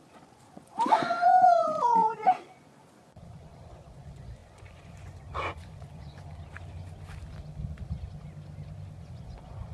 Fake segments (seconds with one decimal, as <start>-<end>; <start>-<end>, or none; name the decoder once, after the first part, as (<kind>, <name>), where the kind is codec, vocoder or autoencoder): 0.0-6.3 (vocoder, Vocos); 9.0-9.7